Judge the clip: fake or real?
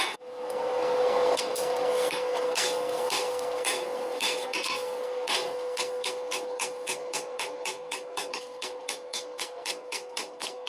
fake